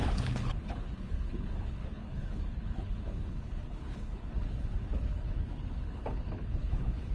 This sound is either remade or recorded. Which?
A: remade